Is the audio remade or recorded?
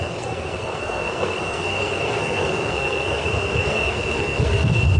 remade